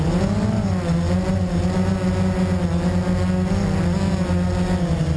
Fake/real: real